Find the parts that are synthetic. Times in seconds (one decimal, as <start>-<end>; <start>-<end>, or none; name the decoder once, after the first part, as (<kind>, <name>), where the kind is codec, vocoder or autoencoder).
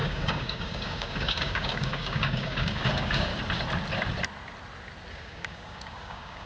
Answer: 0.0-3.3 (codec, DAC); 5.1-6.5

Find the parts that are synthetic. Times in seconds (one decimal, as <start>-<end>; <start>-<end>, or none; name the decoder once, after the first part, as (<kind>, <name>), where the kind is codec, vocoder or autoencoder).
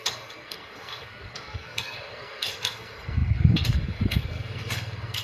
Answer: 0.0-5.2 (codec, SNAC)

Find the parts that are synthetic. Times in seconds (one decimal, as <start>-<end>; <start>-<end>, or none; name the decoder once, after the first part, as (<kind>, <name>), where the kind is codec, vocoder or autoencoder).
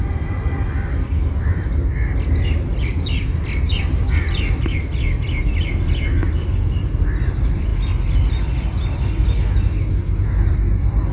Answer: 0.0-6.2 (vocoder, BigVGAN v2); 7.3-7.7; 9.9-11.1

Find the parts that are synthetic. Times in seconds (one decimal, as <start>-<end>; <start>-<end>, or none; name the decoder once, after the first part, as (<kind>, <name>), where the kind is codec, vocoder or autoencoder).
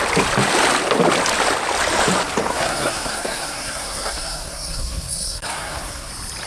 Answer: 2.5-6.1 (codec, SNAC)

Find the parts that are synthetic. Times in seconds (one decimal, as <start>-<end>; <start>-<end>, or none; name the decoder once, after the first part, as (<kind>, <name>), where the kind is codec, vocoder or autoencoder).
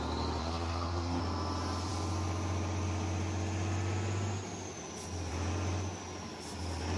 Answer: 0.4-1.2 (codec, SNAC)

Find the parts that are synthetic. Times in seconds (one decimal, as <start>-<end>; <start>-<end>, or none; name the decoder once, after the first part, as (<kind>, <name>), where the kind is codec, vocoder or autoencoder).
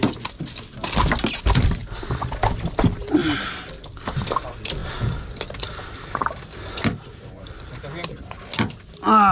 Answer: none